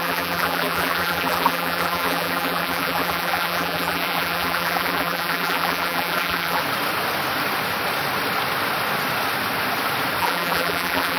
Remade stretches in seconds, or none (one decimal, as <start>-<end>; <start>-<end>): 0.0-6.6; 10.2-11.2